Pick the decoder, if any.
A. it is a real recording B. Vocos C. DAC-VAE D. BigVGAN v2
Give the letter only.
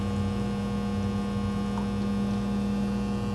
A